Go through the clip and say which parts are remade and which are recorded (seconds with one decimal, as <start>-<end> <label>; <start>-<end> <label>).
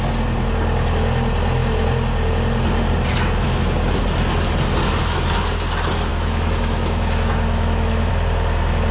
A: 0.0-6.1 recorded; 6.1-8.1 remade; 8.1-8.9 recorded